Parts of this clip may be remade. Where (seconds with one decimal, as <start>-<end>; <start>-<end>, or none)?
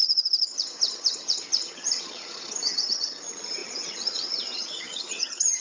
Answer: 0.0-5.6